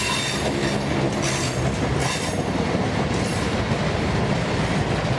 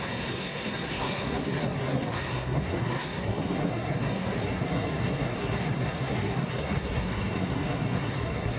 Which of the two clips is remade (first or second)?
second